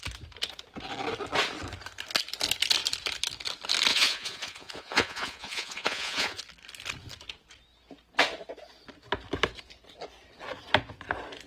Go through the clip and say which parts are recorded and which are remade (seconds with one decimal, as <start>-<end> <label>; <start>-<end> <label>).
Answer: 0.0-3.9 recorded; 3.9-6.4 remade; 6.4-11.5 recorded